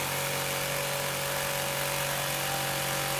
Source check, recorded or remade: recorded